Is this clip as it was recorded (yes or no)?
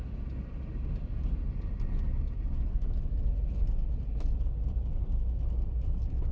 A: yes